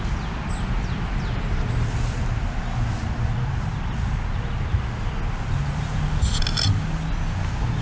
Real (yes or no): yes